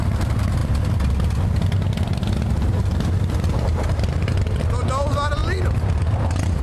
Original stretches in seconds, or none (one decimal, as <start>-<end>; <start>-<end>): 0.0-6.6